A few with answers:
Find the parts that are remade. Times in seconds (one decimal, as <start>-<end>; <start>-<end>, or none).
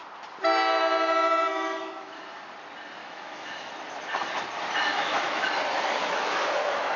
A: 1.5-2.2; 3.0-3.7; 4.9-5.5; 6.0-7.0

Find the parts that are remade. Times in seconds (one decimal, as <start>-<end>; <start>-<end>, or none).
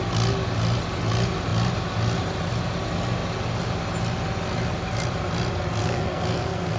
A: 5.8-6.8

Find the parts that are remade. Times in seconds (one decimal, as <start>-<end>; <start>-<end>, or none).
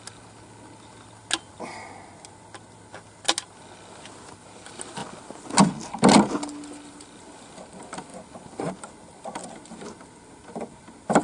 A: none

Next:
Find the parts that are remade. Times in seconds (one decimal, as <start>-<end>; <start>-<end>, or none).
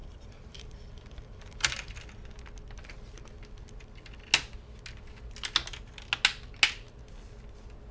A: 0.0-2.0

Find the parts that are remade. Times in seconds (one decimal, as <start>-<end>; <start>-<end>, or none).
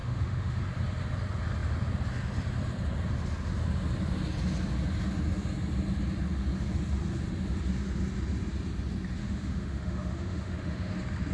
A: 0.0-0.6; 9.2-10.9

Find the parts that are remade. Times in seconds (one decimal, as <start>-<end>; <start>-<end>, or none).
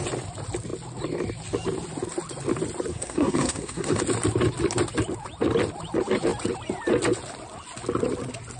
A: 2.9-4.0